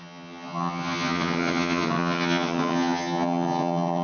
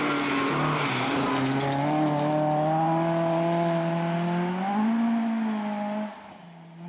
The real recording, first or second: second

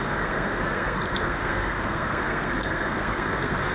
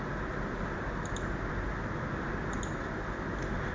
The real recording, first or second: second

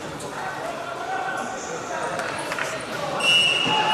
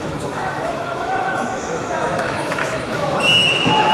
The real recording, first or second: first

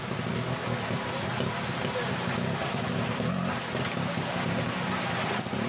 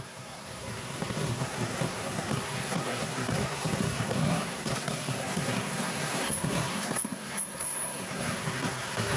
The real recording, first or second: first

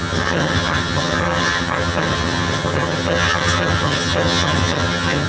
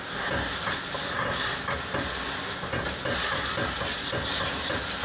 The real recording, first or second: second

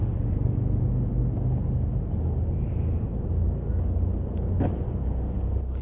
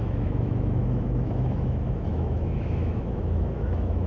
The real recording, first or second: first